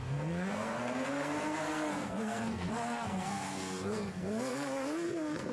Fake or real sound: fake